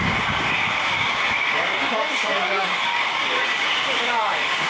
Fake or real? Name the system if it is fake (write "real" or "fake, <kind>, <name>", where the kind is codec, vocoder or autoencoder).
fake, codec, DAC